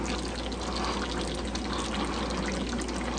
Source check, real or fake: real